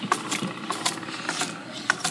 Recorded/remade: recorded